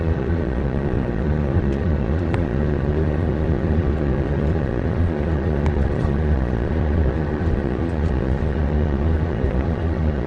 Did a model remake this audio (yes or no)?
yes